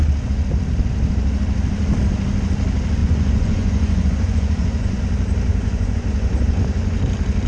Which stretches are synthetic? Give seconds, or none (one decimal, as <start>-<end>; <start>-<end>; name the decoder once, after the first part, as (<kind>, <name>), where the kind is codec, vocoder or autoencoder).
3.0-5.0 (vocoder, Vocos); 5.5-7.0